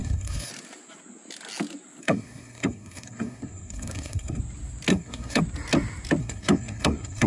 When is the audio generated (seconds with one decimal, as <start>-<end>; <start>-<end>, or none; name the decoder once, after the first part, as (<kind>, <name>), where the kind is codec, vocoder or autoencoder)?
0.0-0.5 (codec, SNAC); 2.0-4.4; 4.9-5.4; 6.2-7.3